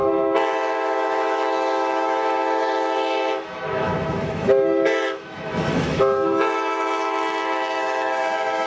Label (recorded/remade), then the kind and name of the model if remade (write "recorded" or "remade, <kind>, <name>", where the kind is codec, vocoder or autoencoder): remade, autoencoder, DAC-VAE